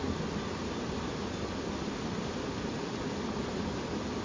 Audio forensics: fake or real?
real